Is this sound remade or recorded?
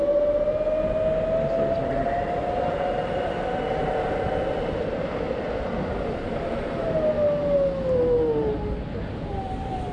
recorded